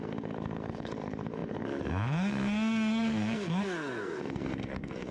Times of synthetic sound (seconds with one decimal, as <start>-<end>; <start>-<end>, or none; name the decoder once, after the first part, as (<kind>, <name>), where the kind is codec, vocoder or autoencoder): 0.0-5.1 (codec, SNAC)